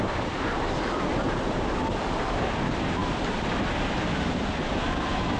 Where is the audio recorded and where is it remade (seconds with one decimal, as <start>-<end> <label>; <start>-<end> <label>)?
0.0-5.4 recorded